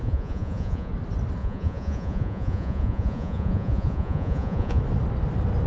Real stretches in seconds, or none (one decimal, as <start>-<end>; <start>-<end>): 0.9-1.4; 4.8-5.7